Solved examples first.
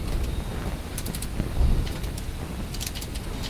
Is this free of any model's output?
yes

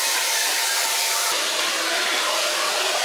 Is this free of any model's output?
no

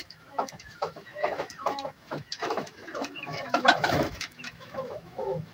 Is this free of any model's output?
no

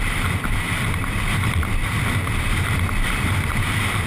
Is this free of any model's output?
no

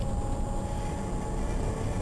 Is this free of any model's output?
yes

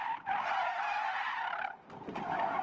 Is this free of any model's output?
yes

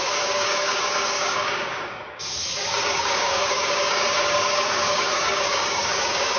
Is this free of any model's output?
no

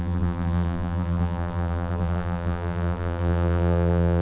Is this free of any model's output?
no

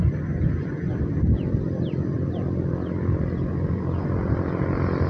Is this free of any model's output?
yes